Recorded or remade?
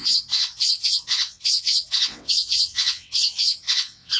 remade